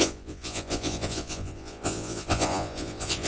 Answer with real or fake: fake